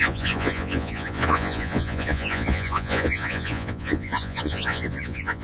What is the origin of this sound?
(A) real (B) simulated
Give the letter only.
B